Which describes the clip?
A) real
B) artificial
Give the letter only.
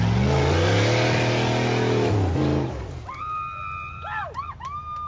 A